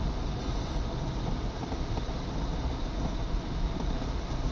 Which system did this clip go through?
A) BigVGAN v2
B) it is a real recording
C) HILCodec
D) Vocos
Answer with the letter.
B